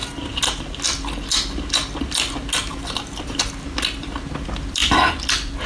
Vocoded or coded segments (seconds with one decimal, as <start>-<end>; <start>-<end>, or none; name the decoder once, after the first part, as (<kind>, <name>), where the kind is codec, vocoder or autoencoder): 4.8-5.7 (vocoder, BigVGAN v2)

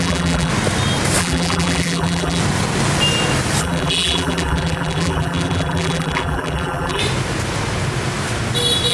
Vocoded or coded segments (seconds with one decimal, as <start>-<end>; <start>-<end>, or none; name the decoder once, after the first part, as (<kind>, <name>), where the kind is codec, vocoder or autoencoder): 0.0-0.5 (vocoder, BigVGAN v2); 1.2-2.4; 3.6-7.0